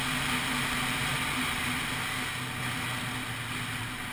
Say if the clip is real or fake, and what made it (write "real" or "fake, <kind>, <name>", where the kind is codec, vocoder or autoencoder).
real